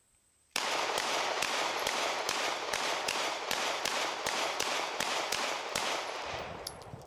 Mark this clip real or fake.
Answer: fake